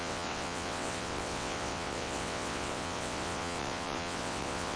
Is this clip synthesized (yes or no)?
yes